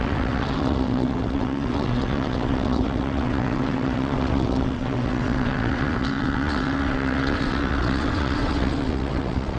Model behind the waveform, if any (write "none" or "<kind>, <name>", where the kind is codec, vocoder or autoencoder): vocoder, WaveNeXt